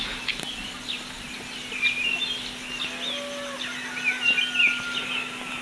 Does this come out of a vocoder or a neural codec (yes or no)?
no